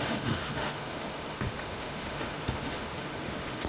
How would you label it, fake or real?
fake